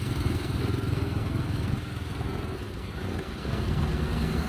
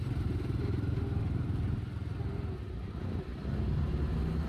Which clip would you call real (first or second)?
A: second